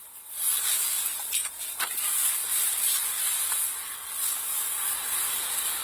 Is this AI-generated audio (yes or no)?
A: no